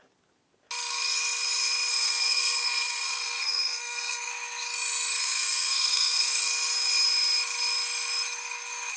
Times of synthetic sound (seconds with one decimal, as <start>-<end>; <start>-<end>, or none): 1.9-4.3; 5.2-6.4